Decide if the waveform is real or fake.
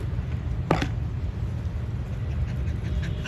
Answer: real